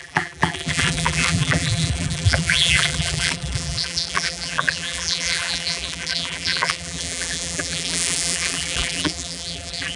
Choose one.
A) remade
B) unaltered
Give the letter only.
A